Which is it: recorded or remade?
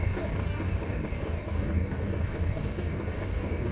remade